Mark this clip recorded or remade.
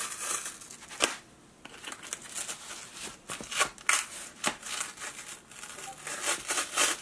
recorded